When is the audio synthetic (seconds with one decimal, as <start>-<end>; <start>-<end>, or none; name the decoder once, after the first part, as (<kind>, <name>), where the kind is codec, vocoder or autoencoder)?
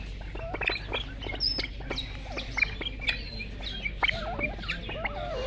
none